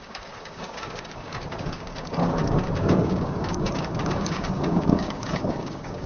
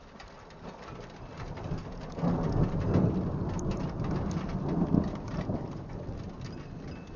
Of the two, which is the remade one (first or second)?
first